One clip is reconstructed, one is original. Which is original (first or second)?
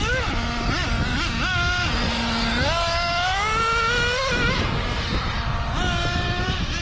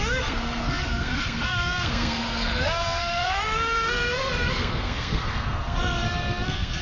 first